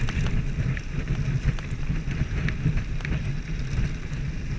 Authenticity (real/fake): real